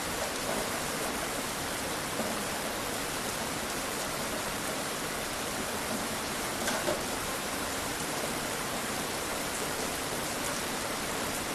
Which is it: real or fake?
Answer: fake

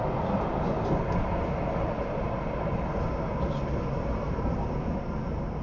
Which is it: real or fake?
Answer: real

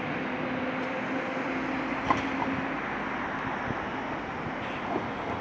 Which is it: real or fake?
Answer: real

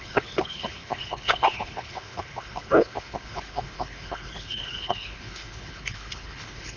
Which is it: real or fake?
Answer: fake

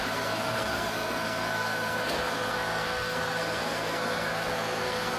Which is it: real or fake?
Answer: fake